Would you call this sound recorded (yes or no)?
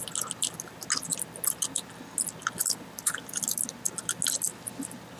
yes